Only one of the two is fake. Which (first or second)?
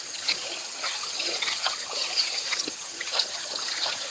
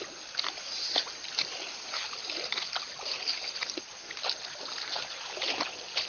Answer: first